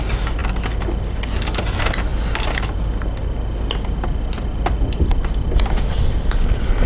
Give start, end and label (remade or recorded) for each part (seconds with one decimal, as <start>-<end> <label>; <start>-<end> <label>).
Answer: 0.0-6.9 recorded